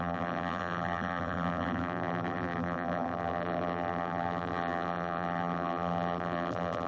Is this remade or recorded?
remade